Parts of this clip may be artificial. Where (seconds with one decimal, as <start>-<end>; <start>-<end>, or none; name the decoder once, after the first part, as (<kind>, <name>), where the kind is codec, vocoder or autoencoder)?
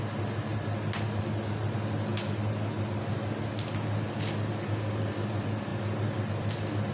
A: none